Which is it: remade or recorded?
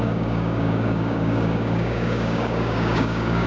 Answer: remade